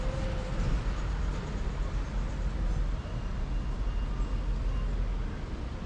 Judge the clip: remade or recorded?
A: recorded